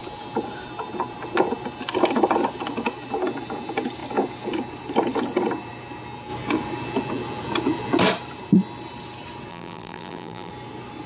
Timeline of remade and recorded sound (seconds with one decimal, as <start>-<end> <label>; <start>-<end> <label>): 0.0-9.5 recorded; 9.5-10.5 remade; 10.5-11.1 recorded